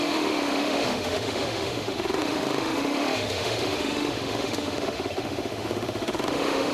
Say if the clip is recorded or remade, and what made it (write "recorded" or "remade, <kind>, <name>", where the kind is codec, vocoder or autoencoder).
remade, autoencoder, DAC-VAE